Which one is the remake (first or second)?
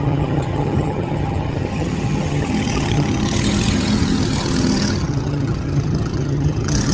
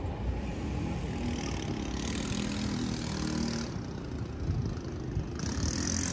first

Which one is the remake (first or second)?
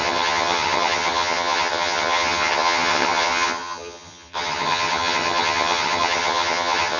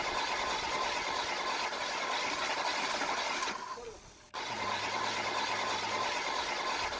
first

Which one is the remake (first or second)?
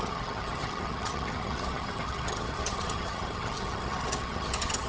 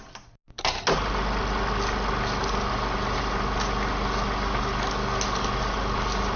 first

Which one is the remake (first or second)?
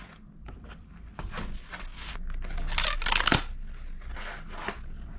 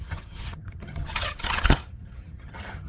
second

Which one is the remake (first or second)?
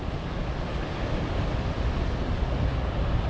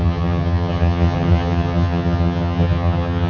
second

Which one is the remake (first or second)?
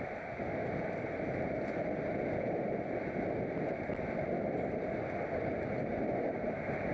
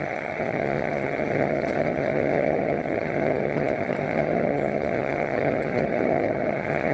second